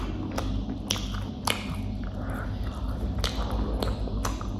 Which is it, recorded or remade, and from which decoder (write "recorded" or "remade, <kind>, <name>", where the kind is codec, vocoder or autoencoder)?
recorded